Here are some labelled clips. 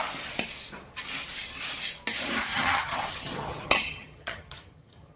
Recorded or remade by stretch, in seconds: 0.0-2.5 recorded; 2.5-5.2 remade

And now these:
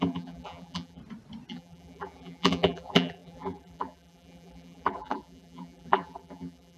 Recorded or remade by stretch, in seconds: 0.0-1.0 remade; 1.0-1.5 recorded; 1.5-6.8 remade

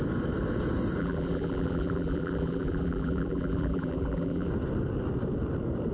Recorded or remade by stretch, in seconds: 0.0-1.0 recorded; 1.0-4.5 remade; 4.5-5.9 recorded

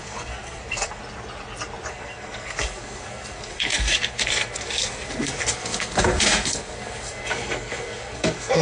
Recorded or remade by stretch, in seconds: 0.0-1.0 remade; 1.0-1.9 recorded; 1.9-8.6 remade

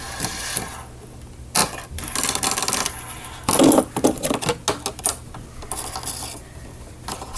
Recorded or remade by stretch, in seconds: 0.0-7.4 recorded

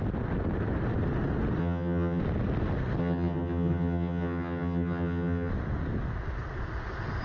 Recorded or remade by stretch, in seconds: 0.0-1.6 recorded; 1.6-2.2 remade; 2.2-3.0 recorded; 3.0-5.5 remade; 5.5-7.2 recorded

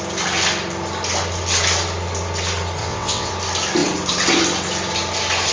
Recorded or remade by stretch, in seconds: 0.0-2.8 recorded; 2.8-3.3 remade; 3.3-5.5 recorded